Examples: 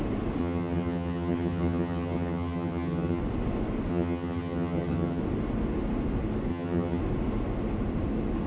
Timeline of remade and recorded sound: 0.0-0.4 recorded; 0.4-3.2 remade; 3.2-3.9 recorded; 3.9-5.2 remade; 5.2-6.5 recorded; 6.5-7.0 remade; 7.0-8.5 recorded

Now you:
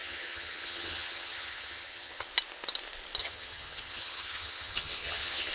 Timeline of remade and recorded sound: 0.0-2.3 remade; 2.3-3.2 recorded; 3.2-5.5 remade

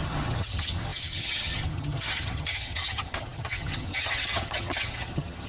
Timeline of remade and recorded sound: 0.0-5.5 remade

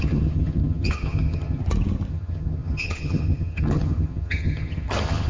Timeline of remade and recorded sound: 0.0-1.6 remade; 1.6-2.1 recorded; 2.1-5.3 remade

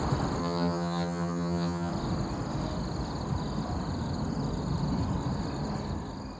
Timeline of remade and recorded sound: 0.0-0.4 recorded; 0.4-1.9 remade; 1.9-6.4 recorded

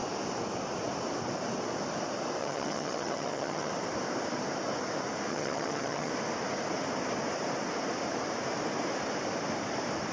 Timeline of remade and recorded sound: 0.0-2.4 recorded; 2.4-3.7 remade; 3.7-5.3 recorded; 5.3-6.1 remade; 6.1-10.1 recorded

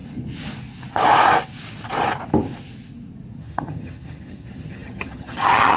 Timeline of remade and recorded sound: 0.0-3.4 recorded; 3.4-5.8 remade

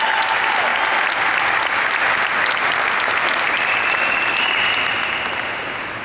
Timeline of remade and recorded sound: 0.0-6.0 recorded